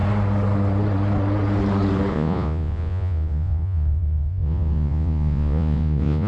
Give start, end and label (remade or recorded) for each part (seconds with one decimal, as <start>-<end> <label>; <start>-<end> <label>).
0.0-2.1 recorded; 2.1-6.3 remade